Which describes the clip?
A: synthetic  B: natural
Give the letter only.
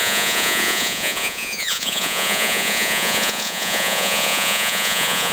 A